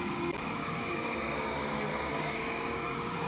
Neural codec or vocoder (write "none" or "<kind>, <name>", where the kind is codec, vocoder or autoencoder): codec, DAC